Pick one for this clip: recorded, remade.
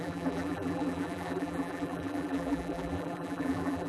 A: remade